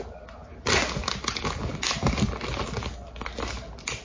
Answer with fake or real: real